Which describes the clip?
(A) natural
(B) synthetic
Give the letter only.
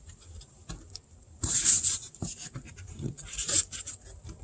B